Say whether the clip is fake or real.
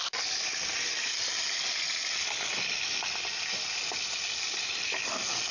real